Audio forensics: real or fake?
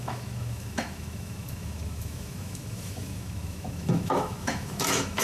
fake